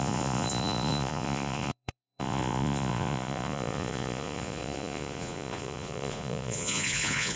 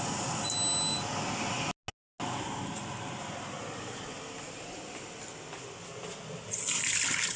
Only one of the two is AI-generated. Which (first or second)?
first